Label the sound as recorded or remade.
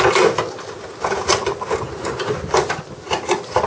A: recorded